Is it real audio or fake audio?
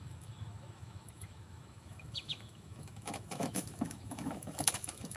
fake